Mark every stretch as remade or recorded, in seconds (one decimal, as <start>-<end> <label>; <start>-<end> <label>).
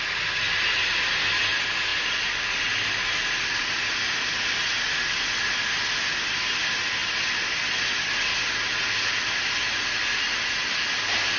0.0-11.4 recorded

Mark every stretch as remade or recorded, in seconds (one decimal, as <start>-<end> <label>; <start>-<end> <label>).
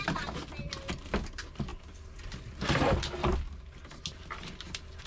0.0-5.1 recorded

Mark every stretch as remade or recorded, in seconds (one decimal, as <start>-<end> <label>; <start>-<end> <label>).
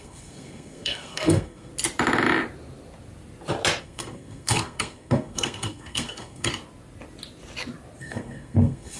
0.0-1.7 remade; 1.7-3.8 recorded; 3.8-6.5 remade; 6.5-8.0 recorded; 8.0-9.0 remade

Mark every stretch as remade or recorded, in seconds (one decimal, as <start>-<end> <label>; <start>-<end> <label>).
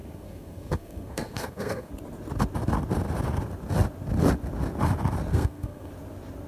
0.0-1.9 remade; 1.9-5.3 recorded; 5.3-5.9 remade; 5.9-6.5 recorded